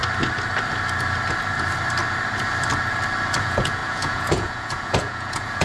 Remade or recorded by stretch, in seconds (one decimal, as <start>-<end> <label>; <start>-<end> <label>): 0.0-3.4 recorded; 3.4-5.6 remade

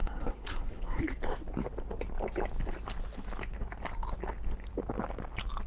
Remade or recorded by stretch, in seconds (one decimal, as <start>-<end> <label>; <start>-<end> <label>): 0.0-1.0 remade; 1.0-5.7 recorded

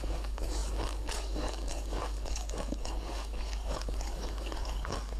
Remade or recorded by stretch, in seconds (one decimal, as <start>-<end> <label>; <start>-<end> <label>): 0.0-5.2 remade